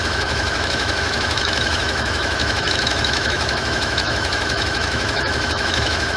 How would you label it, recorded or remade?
remade